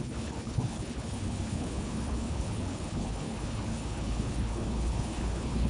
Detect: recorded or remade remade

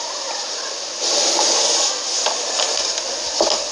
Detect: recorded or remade recorded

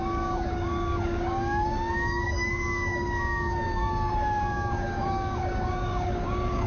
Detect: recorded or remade remade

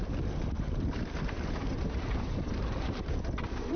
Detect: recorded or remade remade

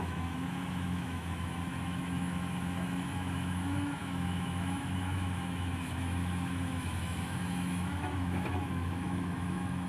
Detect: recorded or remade remade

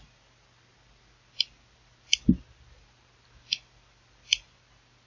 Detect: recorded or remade recorded